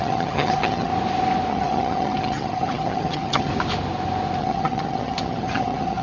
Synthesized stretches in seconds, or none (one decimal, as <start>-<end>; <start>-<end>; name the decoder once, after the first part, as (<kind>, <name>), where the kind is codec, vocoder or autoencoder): 0.0-0.9 (vocoder, HiFi-GAN); 1.5-3.5; 4.4-6.0